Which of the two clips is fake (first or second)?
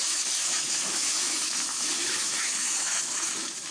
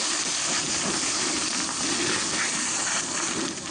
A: first